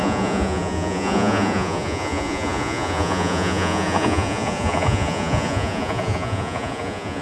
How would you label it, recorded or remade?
remade